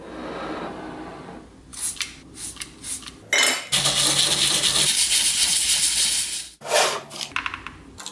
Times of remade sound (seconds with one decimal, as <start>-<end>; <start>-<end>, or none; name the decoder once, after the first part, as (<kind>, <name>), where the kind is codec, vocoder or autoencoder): none